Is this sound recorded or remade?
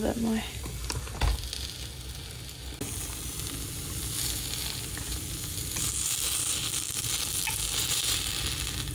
recorded